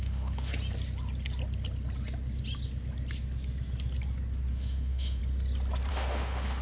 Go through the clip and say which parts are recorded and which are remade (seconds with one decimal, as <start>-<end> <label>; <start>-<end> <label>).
0.0-0.5 remade; 0.5-4.5 recorded; 4.5-5.2 remade; 5.2-5.9 recorded; 5.9-6.6 remade